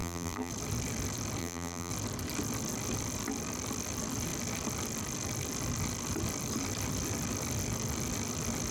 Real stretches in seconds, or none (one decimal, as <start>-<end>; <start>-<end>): 0.5-1.4; 1.9-8.7